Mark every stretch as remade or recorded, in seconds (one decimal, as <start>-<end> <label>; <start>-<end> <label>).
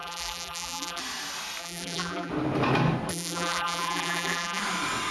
0.0-1.0 remade; 1.0-1.6 recorded; 1.6-2.3 remade; 2.3-3.1 recorded; 3.1-4.6 remade; 4.6-5.1 recorded